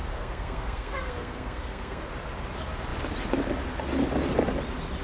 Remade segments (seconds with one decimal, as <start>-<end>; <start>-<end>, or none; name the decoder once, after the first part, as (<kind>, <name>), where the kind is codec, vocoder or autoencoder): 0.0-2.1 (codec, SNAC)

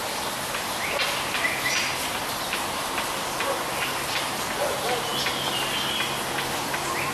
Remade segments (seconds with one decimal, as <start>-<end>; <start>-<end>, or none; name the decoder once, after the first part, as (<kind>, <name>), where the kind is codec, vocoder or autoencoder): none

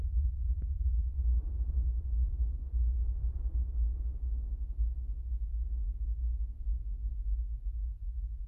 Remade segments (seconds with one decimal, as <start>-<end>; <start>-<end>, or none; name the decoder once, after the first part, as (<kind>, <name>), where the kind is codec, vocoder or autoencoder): none

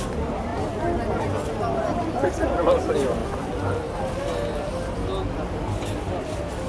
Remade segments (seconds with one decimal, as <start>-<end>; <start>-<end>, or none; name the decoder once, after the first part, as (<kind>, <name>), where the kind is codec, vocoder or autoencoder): none

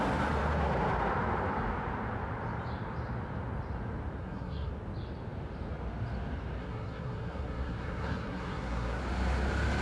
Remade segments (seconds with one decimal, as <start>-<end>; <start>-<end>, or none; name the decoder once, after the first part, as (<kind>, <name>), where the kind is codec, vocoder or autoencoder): 4.2-4.7 (codec, SNAC); 6.6-9.0

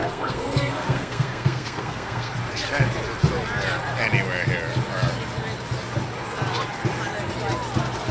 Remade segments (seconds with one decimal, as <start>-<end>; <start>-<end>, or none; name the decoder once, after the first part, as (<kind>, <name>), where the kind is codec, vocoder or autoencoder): 0.0-2.3 (codec, SNAC)

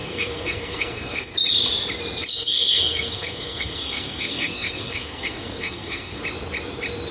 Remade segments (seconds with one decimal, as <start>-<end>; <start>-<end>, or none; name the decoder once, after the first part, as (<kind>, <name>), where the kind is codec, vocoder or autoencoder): 0.0-1.3 (codec, SNAC); 2.3-6.2

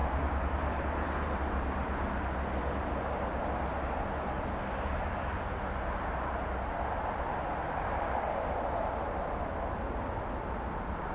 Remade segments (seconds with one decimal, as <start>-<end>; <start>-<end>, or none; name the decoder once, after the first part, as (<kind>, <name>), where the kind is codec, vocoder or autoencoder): none